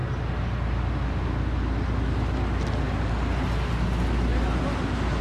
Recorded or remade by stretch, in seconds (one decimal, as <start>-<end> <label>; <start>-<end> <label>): 0.0-5.2 recorded